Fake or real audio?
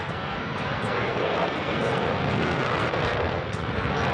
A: fake